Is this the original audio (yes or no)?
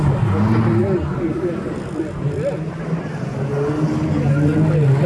yes